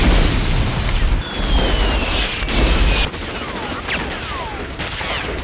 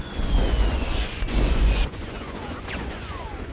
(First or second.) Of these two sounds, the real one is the first